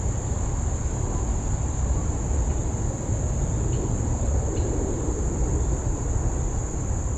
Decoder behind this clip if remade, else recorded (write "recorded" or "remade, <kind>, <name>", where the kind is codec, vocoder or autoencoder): recorded